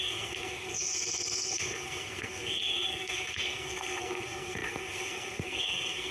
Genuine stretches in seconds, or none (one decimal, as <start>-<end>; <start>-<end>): none